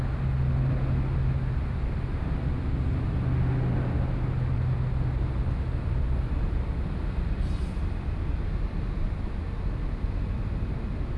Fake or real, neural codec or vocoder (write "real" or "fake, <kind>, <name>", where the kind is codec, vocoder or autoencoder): real